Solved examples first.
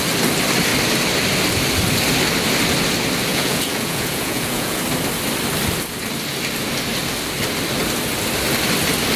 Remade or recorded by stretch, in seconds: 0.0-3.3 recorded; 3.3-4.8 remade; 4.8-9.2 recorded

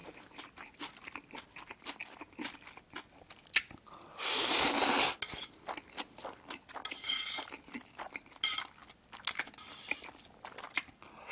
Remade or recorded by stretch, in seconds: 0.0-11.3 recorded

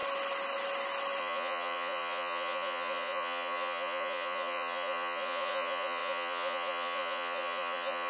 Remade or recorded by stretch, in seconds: 0.0-1.2 recorded; 1.2-8.1 remade

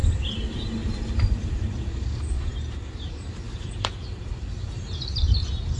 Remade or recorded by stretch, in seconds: 0.0-1.7 recorded; 1.7-5.8 remade

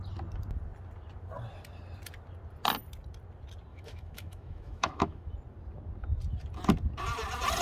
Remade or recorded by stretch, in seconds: 0.0-3.7 recorded; 3.7-5.3 remade; 5.3-7.6 recorded

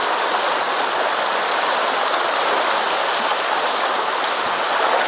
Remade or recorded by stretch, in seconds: 0.0-5.1 recorded